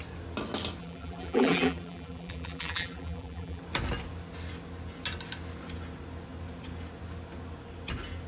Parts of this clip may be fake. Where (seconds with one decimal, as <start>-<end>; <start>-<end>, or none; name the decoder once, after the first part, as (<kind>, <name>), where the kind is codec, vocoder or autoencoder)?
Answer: 0.8-3.6 (vocoder, BigVGAN v2)